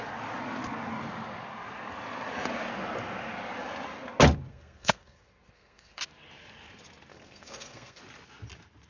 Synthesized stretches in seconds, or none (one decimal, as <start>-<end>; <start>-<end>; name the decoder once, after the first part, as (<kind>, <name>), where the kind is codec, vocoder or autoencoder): 4.5-6.0 (codec, SNAC); 7.1-8.0